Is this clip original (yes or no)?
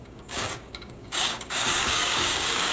no